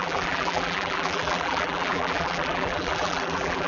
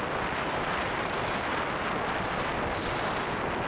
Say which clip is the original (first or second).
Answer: second